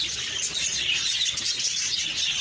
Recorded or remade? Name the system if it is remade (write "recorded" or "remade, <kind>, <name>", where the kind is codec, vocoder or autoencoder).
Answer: recorded